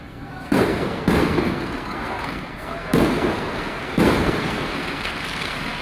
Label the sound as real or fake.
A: fake